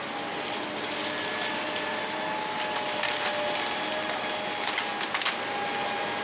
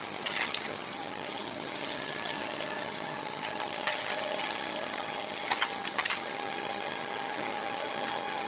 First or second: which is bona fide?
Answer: first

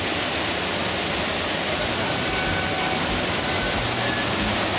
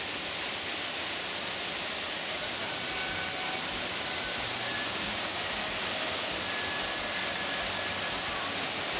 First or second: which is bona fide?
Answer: first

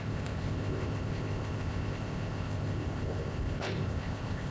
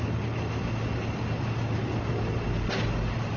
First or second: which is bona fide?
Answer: second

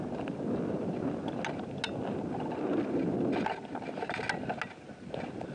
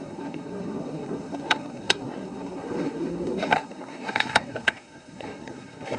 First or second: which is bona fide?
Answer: first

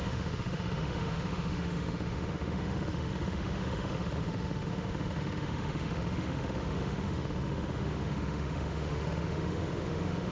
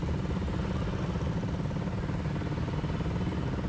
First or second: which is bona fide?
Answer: second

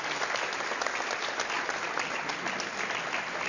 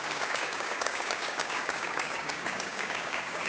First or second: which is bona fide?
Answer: first